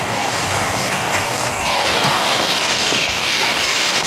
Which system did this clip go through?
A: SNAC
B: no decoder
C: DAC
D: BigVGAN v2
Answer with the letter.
C